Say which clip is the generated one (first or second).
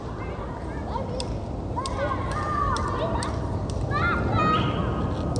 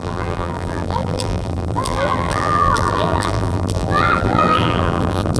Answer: second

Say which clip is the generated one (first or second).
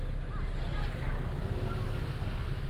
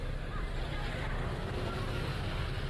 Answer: second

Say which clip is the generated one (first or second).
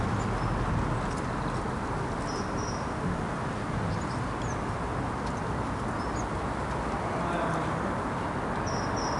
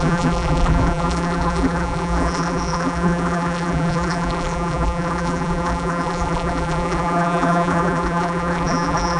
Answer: second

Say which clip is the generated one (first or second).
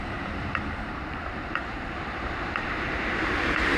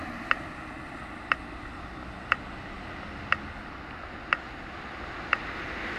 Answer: first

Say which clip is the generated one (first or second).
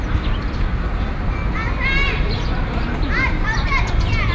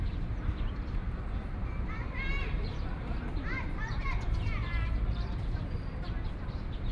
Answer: second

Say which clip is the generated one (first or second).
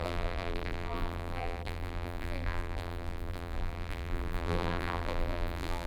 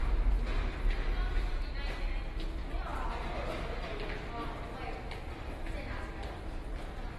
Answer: first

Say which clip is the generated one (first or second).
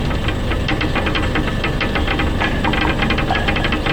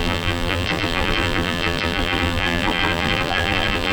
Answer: second